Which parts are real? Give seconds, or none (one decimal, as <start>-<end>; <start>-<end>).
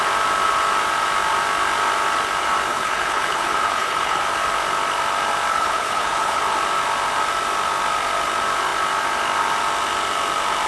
0.0-2.7; 4.2-5.5; 6.4-10.7